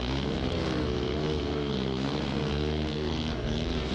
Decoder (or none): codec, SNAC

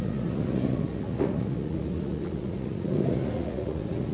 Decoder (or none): vocoder, Vocos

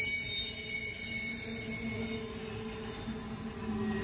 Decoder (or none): none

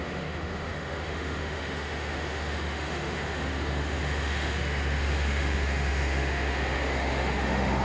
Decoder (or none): autoencoder, DAC-VAE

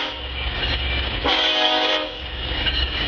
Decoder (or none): codec, DAC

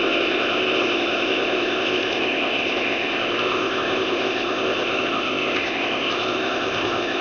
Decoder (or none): codec, ZipCodec